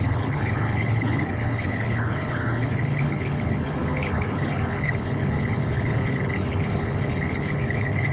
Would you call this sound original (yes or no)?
no